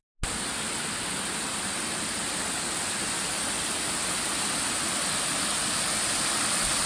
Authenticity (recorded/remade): recorded